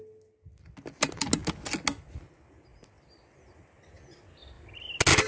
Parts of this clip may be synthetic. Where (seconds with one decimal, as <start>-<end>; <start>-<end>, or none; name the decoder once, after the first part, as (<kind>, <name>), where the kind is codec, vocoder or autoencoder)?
none